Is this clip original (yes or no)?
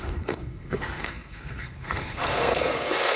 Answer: no